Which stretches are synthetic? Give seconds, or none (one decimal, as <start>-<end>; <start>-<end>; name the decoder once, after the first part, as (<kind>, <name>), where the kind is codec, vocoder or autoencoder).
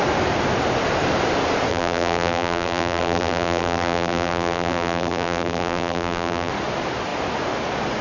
1.7-6.5 (vocoder, BigVGAN v2)